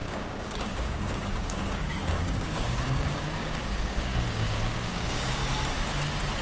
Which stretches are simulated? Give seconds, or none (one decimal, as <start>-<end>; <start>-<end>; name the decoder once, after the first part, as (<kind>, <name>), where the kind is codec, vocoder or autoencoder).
0.0-5.4 (codec, DAC)